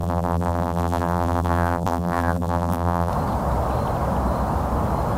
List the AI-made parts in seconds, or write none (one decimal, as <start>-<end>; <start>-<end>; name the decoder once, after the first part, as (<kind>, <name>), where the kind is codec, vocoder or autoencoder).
0.0-3.1 (vocoder, BigVGAN v2)